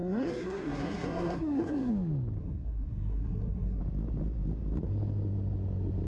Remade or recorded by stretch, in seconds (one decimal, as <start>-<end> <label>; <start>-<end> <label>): 0.0-1.9 remade; 1.9-2.4 recorded; 2.4-3.8 remade; 3.8-6.1 recorded